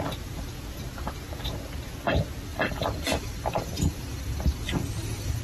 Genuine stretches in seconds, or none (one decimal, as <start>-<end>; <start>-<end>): 0.0-2.5